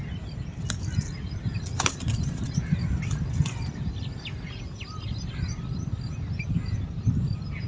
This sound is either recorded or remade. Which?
remade